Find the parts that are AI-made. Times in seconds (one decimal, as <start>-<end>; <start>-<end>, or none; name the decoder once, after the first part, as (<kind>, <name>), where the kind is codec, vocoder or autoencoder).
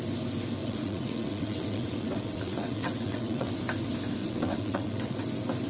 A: 0.6-3.5 (vocoder, WaveNeXt); 4.2-5.2